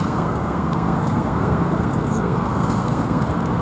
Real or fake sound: fake